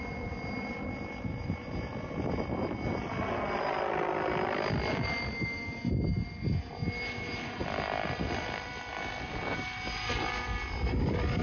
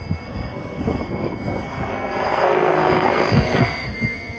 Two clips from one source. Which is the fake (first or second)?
second